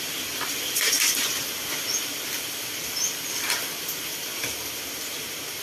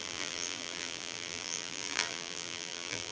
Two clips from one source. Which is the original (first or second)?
first